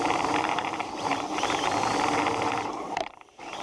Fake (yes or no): yes